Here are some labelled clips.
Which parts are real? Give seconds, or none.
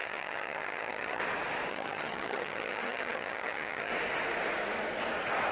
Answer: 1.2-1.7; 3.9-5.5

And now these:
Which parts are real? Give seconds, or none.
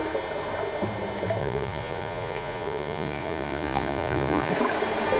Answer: 0.0-1.4; 4.5-5.2